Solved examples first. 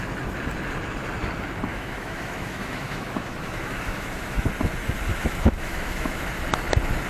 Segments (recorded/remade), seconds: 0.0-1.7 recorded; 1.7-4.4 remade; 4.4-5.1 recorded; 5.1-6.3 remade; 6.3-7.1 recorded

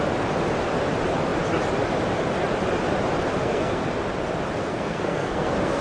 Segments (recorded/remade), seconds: 0.0-3.4 recorded; 3.4-3.9 remade; 3.9-4.6 recorded; 4.6-5.8 remade

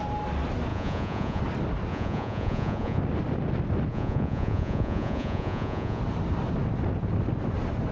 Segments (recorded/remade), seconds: 0.0-0.7 recorded; 0.7-1.4 remade; 1.4-1.9 recorded; 1.9-3.0 remade; 3.0-3.9 recorded; 3.9-6.0 remade; 6.0-7.9 recorded

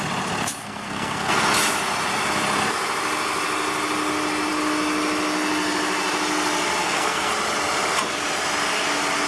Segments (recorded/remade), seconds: 0.0-0.6 recorded; 0.6-1.4 remade; 1.4-6.8 recorded; 6.8-7.3 remade; 7.3-9.3 recorded

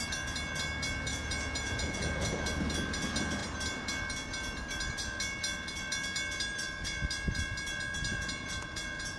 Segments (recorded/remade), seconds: 0.0-1.1 recorded; 1.1-2.4 remade; 2.4-8.1 recorded; 8.1-9.2 remade